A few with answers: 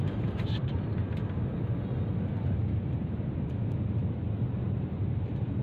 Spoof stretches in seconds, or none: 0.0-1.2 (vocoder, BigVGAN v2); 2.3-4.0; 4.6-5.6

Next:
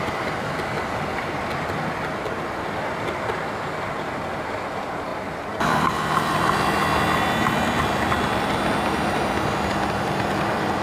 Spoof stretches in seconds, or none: 5.1-5.9 (vocoder, BigVGAN v2)

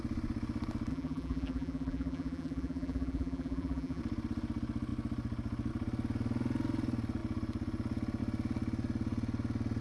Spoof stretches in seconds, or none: 0.9-4.0 (vocoder, BigVGAN v2)

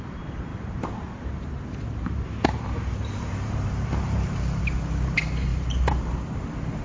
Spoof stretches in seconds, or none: 0.5-4.6 (vocoder, BigVGAN v2); 5.5-6.3

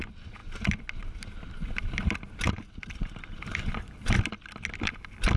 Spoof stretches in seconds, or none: none